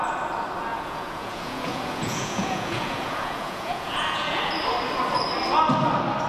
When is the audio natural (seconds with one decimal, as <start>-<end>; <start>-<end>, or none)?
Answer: 0.0-0.7; 4.4-6.3

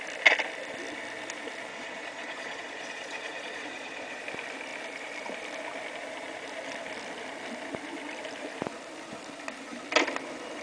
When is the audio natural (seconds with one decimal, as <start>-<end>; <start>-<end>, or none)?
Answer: 0.0-1.7; 4.2-10.6

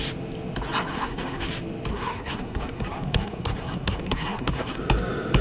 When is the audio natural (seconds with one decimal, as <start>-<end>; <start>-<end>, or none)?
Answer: 0.0-0.9; 1.5-1.9; 4.8-5.4